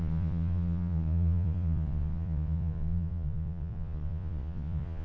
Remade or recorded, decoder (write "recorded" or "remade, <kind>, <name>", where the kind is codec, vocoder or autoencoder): remade, vocoder, Vocos